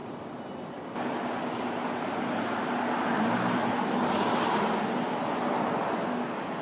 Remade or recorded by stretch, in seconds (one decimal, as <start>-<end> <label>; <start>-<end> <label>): 0.0-6.6 recorded